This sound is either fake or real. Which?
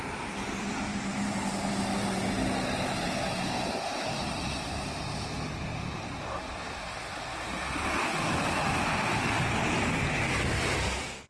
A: real